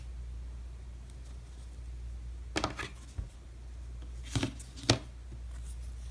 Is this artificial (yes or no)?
no